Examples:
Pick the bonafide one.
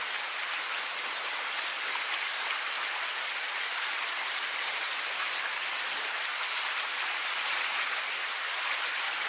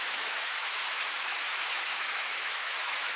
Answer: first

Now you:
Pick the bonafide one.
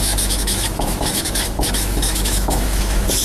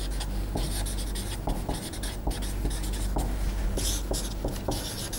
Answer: second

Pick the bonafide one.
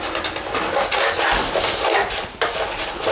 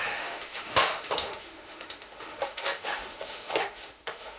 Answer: first